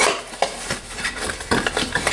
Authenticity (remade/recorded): remade